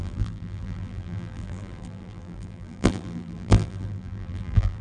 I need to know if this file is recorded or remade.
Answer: remade